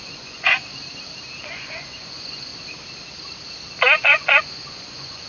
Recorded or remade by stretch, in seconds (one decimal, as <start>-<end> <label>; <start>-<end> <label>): 0.0-0.6 remade; 0.6-1.4 recorded; 1.4-2.5 remade; 2.5-4.0 recorded; 4.0-5.3 remade